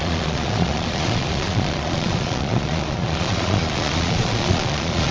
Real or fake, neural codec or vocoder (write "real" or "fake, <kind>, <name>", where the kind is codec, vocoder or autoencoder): fake, vocoder, Vocos